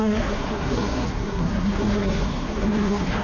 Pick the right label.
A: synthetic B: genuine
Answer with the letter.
A